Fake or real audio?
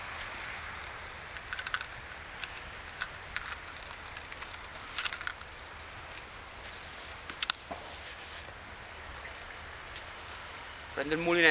real